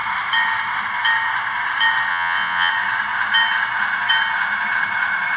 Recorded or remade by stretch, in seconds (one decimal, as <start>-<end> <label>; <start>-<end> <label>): 0.0-2.1 recorded; 2.1-2.7 remade; 2.7-5.4 recorded